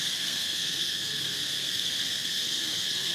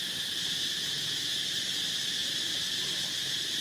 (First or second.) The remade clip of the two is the first